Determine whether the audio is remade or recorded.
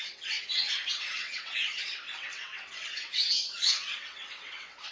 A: remade